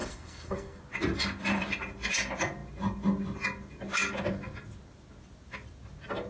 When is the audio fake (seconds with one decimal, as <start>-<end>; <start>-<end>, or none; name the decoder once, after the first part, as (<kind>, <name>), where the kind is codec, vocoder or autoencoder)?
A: 0.0-0.8 (codec, SNAC)